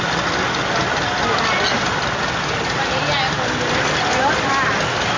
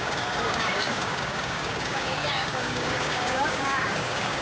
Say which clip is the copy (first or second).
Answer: second